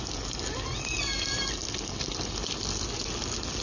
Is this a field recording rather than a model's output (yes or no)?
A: yes